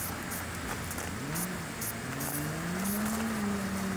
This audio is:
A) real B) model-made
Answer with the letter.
A